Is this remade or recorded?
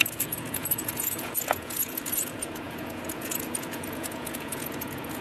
remade